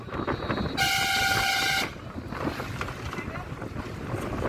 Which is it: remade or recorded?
recorded